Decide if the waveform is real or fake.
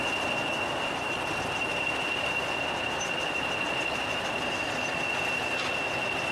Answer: real